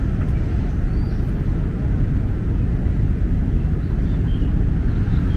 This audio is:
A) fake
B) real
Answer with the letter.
B